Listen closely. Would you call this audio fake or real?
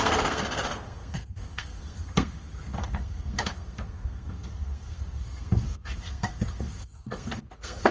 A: fake